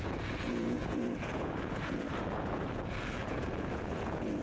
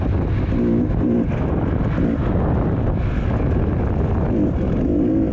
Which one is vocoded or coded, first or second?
first